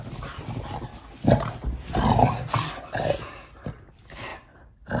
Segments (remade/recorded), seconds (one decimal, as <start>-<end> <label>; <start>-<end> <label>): 0.0-0.9 remade; 0.9-3.9 recorded; 3.9-4.3 remade; 4.3-5.0 recorded